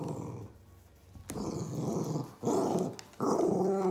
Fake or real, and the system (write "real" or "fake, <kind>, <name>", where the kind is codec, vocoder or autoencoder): real